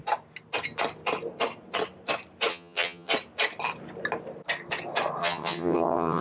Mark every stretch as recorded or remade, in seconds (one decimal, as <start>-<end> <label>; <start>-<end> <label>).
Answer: 0.0-2.5 recorded; 2.5-3.1 remade; 3.1-5.2 recorded; 5.2-6.2 remade